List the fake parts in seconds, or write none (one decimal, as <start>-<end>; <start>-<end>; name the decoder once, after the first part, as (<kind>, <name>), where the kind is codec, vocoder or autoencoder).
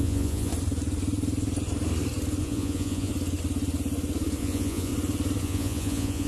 0.0-0.5 (vocoder, Vocos); 2.4-3.1; 4.4-4.9; 5.4-6.3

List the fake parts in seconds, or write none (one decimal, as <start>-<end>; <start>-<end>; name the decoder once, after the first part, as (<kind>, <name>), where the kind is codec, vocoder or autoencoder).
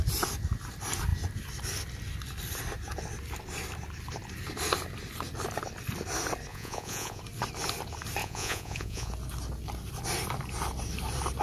6.5-7.2 (vocoder, Vocos); 8.2-9.1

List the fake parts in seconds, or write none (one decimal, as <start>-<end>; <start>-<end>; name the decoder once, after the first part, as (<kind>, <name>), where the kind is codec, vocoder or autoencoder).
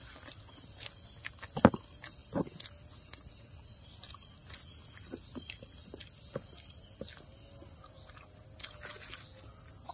none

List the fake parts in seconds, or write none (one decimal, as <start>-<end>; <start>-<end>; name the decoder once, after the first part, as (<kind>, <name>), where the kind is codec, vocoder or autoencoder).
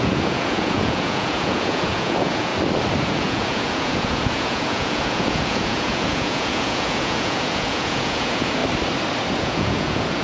0.0-2.5 (vocoder, Vocos); 3.0-8.6; 9.4-10.2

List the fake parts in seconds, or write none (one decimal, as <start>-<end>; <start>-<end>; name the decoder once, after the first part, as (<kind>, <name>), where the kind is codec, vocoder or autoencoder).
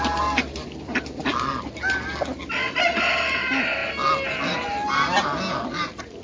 none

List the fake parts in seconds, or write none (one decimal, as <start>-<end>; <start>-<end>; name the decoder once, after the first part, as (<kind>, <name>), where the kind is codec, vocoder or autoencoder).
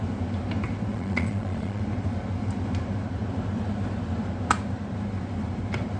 0.9-1.8 (vocoder, Vocos)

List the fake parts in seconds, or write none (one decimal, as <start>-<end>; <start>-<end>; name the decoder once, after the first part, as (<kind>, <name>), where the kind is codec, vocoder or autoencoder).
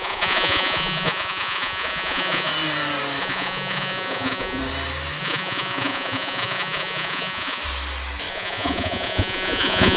0.0-2.5 (vocoder, Vocos); 3.2-4.6; 5.2-7.6; 8.3-10.0